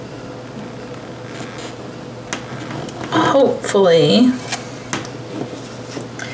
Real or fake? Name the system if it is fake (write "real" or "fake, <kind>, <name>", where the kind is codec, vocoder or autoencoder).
real